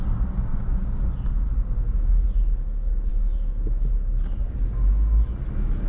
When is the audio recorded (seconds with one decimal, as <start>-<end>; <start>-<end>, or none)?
0.0-0.5; 1.1-1.9; 2.6-5.9